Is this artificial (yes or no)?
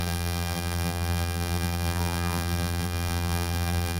yes